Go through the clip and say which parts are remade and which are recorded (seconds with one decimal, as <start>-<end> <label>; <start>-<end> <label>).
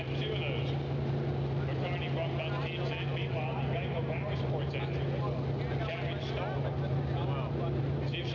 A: 0.0-8.3 recorded